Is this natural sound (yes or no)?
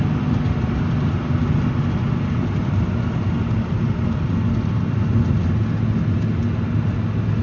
yes